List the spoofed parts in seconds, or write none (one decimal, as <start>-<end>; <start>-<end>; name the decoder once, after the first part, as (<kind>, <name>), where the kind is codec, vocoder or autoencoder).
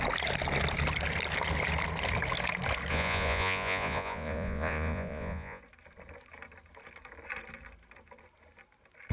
2.9-5.6 (vocoder, Vocos)